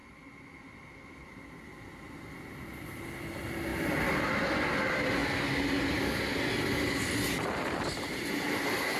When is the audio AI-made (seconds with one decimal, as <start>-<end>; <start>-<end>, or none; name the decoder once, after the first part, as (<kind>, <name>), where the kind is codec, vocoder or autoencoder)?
none